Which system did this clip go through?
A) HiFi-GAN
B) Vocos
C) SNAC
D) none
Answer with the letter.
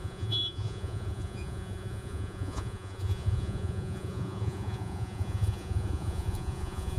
B